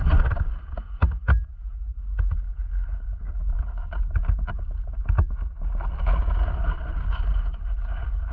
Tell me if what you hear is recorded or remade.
recorded